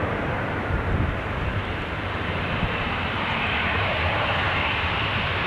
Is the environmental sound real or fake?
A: fake